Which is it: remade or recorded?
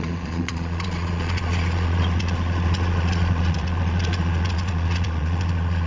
remade